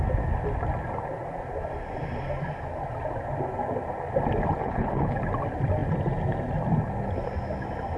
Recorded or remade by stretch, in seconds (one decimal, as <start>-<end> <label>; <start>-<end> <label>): 0.0-4.6 recorded; 4.6-5.2 remade; 5.2-8.0 recorded